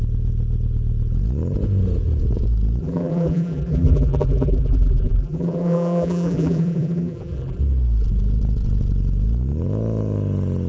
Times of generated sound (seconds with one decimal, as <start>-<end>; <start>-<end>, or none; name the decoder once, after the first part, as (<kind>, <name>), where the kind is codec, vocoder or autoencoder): 2.8-7.6 (vocoder, BigVGAN v2)